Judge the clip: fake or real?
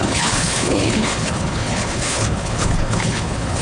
fake